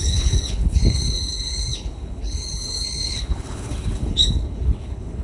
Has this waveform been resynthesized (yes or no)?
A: yes